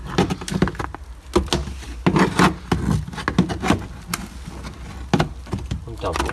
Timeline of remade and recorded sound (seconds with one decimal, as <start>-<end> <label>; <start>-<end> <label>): 0.0-6.3 recorded